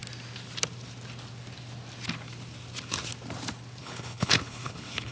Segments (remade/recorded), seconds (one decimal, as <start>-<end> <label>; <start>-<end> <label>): 0.0-3.8 recorded; 3.8-5.1 remade